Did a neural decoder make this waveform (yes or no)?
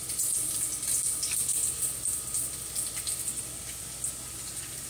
no